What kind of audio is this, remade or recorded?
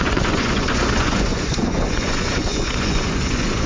remade